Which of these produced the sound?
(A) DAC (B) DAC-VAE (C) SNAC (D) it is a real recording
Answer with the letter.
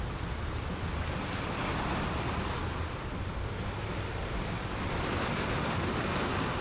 D